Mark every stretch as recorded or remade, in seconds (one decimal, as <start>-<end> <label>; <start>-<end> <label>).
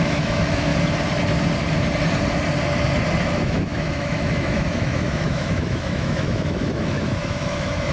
0.0-0.7 remade; 0.7-3.2 recorded; 3.2-7.9 remade